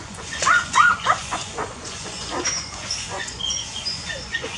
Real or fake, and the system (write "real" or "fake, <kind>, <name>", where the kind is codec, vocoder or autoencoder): fake, vocoder, Vocos